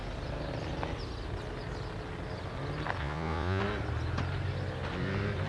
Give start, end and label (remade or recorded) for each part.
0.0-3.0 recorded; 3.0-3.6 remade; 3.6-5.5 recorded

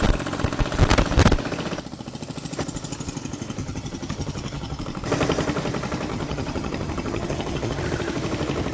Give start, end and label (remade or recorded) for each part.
0.0-3.6 recorded; 3.6-4.8 remade; 4.8-6.1 recorded; 6.1-7.8 remade; 7.8-8.7 recorded

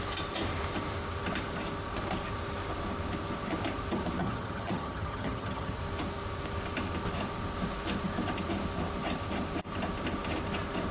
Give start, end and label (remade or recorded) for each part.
0.0-4.2 recorded; 4.2-5.8 remade; 5.8-10.9 recorded

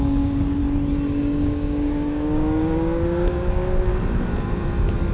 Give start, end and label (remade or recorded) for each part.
0.0-0.6 remade; 0.6-1.2 recorded; 1.2-3.9 remade; 3.9-5.1 recorded

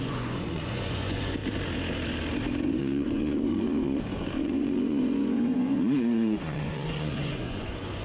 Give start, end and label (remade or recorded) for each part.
0.0-1.4 remade; 1.4-2.8 recorded; 2.8-8.0 remade